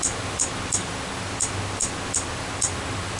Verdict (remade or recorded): recorded